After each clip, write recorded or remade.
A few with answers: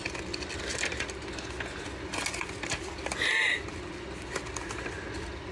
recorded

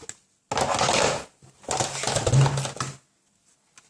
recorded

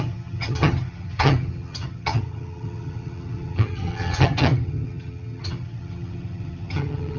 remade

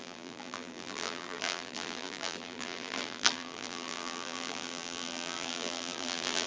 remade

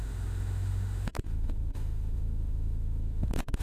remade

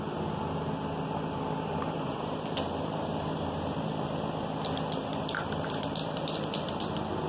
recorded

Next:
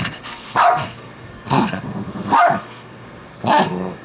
remade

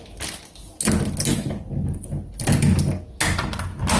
recorded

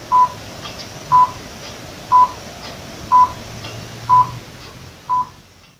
recorded